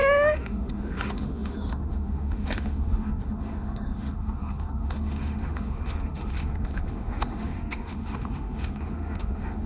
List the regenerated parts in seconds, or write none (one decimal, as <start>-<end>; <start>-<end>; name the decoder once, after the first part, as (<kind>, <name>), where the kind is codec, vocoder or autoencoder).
0.0-9.7 (autoencoder, DAC-VAE)